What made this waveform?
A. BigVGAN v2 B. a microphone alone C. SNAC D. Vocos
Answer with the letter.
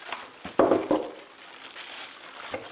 B